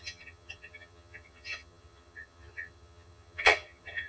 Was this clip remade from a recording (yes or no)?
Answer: yes